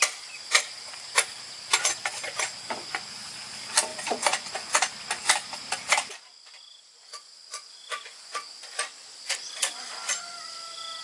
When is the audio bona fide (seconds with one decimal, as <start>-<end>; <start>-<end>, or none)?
0.0-1.8; 3.3-3.9; 4.7-7.5; 8.6-11.0